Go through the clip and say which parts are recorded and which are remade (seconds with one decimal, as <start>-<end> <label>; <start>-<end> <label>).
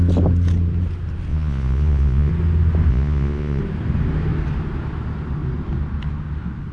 0.0-1.3 recorded; 1.3-2.3 remade; 2.3-2.9 recorded; 2.9-3.6 remade; 3.6-6.7 recorded